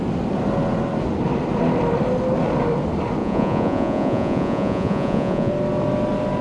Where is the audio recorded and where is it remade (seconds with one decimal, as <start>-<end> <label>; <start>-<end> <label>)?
0.0-3.2 recorded; 3.2-5.5 remade; 5.5-6.4 recorded